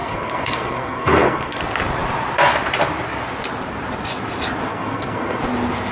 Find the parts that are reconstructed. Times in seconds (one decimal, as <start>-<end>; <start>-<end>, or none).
0.0-1.6; 4.7-5.4